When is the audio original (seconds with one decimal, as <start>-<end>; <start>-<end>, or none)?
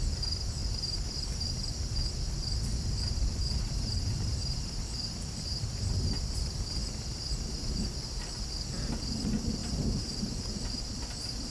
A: 0.0-0.6; 1.5-9.6; 10.2-11.5